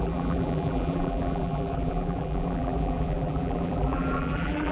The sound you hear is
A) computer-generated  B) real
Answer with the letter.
A